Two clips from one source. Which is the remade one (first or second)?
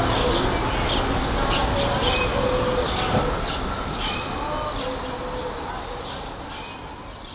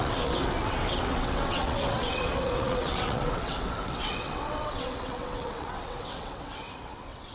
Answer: second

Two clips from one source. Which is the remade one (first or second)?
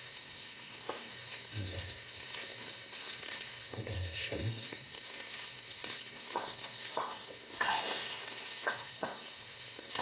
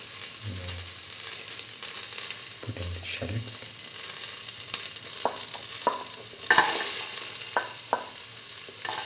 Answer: first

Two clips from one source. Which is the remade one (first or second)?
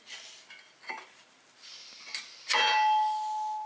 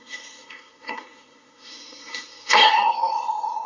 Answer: second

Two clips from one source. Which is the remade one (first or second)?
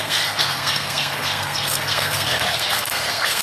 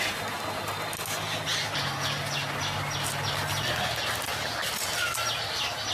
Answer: first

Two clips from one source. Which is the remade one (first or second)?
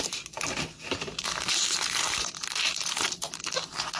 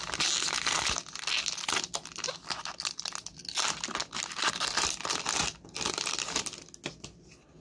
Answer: first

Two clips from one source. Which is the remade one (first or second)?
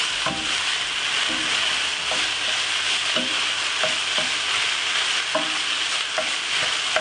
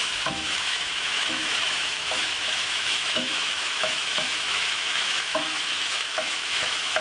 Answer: second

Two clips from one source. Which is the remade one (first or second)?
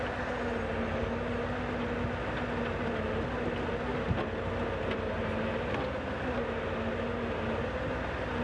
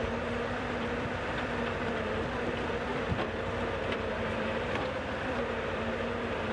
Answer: second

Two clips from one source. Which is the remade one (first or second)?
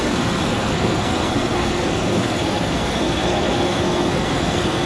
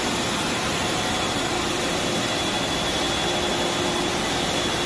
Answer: first